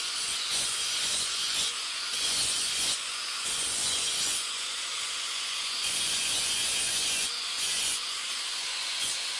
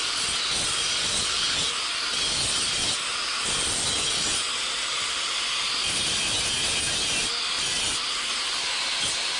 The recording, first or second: second